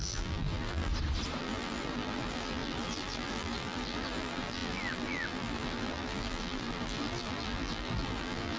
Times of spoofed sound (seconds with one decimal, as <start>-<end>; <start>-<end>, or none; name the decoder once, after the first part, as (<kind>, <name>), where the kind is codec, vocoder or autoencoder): 0.0-0.9 (vocoder, BigVGAN v2); 1.4-8.6